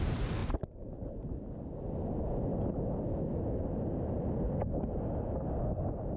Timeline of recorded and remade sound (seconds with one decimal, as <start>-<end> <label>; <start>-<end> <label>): 0.0-6.2 recorded